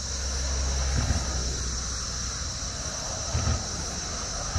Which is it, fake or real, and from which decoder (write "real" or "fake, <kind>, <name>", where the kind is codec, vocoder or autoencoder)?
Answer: real